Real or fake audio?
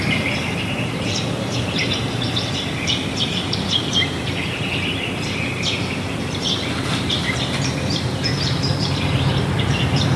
fake